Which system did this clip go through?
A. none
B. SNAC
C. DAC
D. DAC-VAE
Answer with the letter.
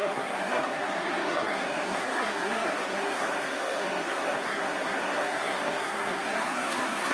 B